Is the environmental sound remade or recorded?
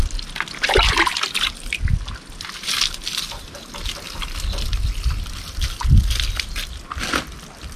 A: recorded